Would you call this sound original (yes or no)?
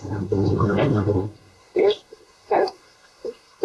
no